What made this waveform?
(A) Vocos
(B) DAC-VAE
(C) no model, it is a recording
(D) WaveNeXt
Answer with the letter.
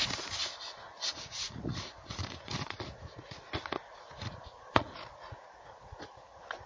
A